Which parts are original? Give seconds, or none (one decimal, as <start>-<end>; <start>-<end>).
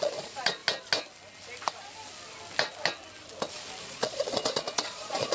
0.6-3.8